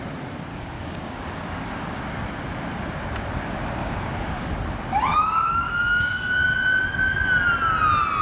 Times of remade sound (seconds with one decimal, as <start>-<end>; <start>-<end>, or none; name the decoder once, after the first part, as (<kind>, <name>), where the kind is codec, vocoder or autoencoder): 0.5-2.2 (codec, DAC); 3.8-4.5; 5.1-6.3